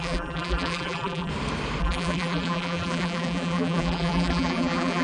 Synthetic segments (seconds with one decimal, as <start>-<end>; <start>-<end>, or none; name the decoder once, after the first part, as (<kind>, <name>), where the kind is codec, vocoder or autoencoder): 0.0-1.3 (vocoder, BigVGAN v2); 1.8-5.0